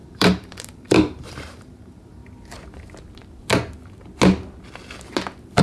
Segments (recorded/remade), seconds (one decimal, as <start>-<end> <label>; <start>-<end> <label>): 0.0-2.2 remade; 2.2-5.6 recorded